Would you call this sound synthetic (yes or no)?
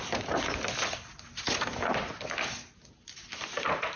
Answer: no